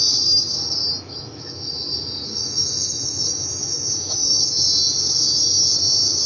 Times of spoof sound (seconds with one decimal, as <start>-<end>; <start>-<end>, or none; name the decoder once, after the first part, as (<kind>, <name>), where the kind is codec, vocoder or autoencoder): 0.9-1.7 (autoencoder, DAC-VAE); 2.4-4.4